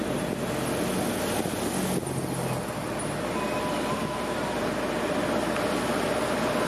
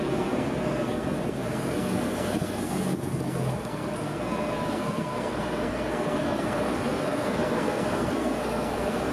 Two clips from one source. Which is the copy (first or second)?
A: second